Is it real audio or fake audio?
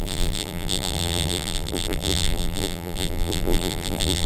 fake